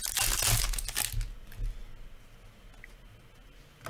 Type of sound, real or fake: real